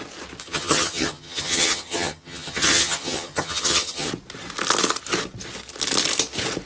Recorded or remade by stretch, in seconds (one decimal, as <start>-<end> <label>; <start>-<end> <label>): 0.0-0.4 recorded; 0.4-4.1 remade; 4.1-6.7 recorded